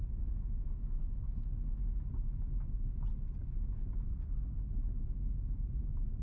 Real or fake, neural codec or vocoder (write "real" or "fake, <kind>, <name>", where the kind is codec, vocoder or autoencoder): real